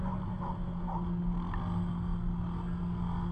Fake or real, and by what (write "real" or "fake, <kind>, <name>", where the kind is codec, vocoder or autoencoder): real